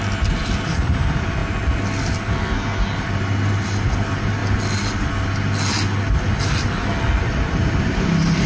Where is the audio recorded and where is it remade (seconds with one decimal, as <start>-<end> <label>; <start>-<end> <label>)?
0.0-1.4 remade; 1.4-3.0 recorded; 3.0-4.4 remade; 4.4-7.2 recorded; 7.2-8.5 remade